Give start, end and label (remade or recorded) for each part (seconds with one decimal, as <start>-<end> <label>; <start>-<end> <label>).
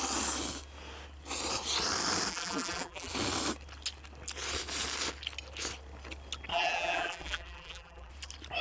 0.0-2.3 recorded; 2.3-3.1 remade; 3.1-6.5 recorded; 6.5-8.1 remade; 8.1-8.6 recorded